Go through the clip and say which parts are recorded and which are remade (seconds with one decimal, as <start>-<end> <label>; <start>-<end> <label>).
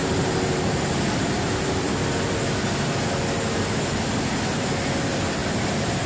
0.0-2.1 remade; 2.1-6.1 recorded